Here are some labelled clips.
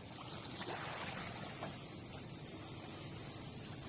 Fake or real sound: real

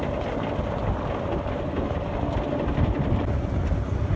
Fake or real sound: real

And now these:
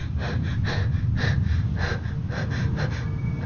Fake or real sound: real